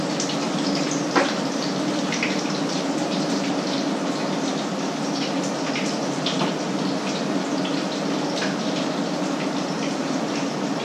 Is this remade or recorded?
recorded